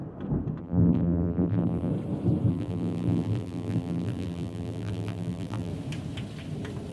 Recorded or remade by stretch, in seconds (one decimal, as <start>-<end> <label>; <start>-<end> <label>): 0.0-0.6 recorded; 0.6-1.9 remade; 1.9-2.5 recorded; 2.5-5.7 remade; 5.7-6.9 recorded